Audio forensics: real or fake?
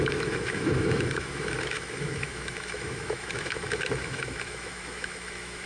fake